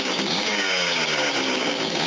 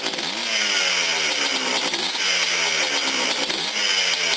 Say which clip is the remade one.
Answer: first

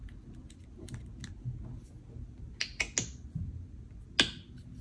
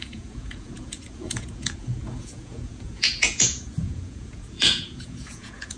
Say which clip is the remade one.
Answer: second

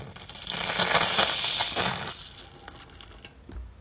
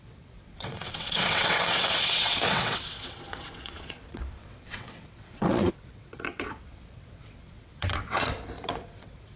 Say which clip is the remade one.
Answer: second